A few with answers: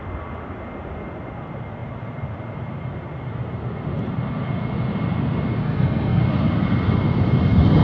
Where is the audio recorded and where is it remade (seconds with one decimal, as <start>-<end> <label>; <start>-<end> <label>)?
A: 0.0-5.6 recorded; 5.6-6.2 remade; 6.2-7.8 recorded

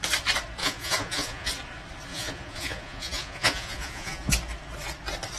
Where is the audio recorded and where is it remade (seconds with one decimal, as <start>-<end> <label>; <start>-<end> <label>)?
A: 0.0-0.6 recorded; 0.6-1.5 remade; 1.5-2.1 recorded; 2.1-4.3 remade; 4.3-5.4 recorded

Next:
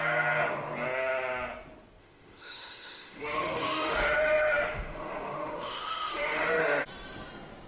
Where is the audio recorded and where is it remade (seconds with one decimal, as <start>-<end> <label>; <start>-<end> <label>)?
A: 0.0-2.0 recorded; 2.0-6.6 remade; 6.6-7.7 recorded